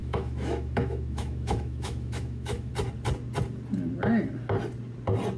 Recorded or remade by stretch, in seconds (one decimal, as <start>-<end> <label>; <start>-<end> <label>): 0.0-2.7 remade; 2.7-5.4 recorded